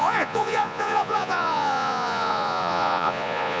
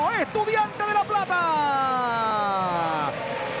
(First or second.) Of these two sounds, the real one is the second